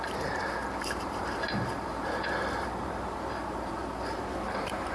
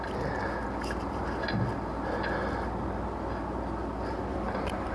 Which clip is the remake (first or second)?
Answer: first